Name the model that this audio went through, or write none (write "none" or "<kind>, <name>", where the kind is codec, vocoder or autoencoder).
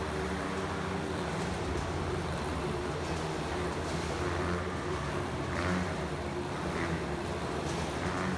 none